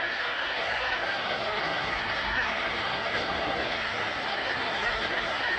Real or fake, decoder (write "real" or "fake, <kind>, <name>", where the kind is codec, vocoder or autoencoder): fake, codec, SNAC